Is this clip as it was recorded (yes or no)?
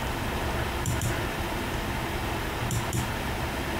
no